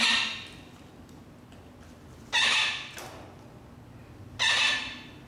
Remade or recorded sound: recorded